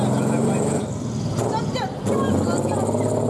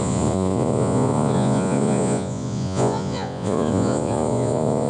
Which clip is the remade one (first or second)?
second